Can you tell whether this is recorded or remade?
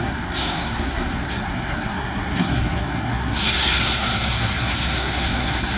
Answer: remade